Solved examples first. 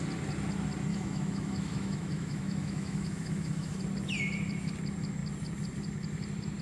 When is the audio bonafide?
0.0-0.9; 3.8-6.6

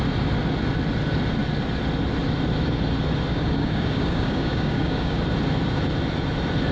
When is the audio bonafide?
0.0-3.3; 5.2-6.7

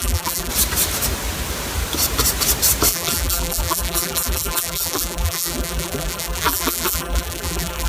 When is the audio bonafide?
0.5-2.9

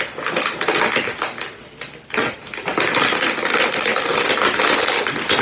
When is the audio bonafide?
0.0-5.4

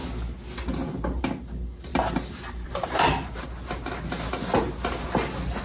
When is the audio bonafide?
0.0-1.9; 3.4-5.6